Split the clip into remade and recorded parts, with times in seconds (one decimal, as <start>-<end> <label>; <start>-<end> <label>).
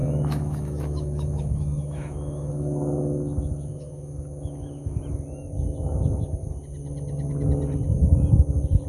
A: 0.0-5.0 remade; 5.0-8.9 recorded